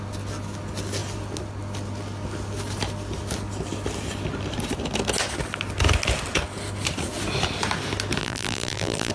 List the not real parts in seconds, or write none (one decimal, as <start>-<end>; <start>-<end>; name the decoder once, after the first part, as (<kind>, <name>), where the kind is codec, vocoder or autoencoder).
8.2-9.1 (vocoder, BigVGAN v2)